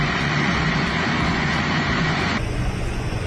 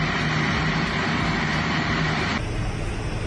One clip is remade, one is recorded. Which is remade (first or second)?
first